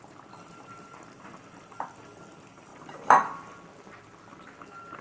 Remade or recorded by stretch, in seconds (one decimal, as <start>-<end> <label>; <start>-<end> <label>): 0.0-2.7 recorded; 2.7-3.6 remade; 3.6-5.0 recorded